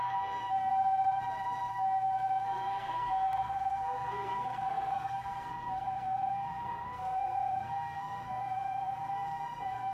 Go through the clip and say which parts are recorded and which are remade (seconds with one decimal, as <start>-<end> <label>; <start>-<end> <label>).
0.0-0.7 remade; 0.7-1.7 recorded; 1.7-9.9 remade